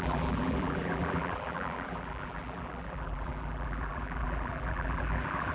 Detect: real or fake fake